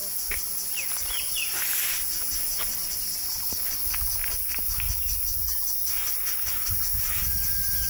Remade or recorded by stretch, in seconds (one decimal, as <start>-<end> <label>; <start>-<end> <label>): 0.0-1.9 recorded; 1.9-2.7 remade; 2.7-6.7 recorded; 6.7-7.9 remade